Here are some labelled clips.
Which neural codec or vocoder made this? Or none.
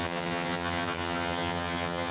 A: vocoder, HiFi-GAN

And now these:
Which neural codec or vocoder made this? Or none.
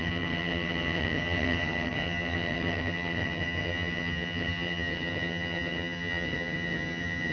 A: vocoder, HiFi-GAN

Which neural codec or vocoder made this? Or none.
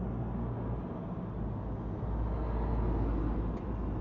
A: none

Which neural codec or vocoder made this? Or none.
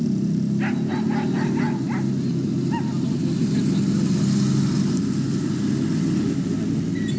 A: none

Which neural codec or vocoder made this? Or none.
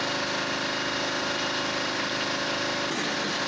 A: none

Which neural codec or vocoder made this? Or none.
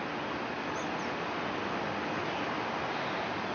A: none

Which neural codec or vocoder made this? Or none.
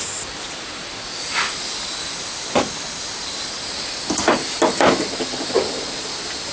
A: none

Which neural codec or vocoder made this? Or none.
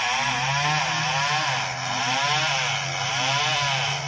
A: none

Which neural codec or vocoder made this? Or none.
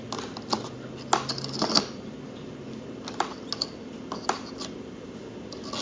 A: none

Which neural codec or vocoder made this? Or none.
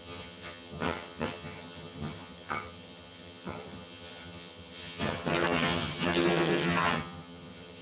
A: vocoder, HiFi-GAN